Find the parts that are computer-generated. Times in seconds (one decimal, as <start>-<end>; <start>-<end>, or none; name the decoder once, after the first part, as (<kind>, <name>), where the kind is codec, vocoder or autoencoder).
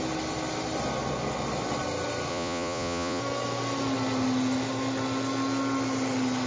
2.3-3.2 (vocoder, Vocos)